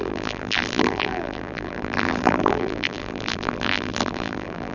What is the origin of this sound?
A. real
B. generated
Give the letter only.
B